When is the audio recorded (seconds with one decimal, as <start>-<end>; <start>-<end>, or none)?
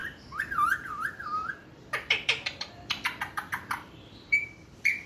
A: 1.2-1.6